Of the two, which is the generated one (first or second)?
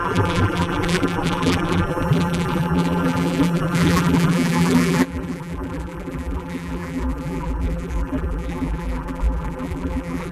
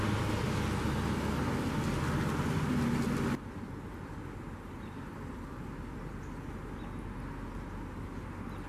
first